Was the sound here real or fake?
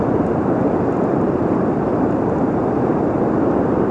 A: real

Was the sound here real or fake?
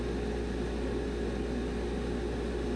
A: real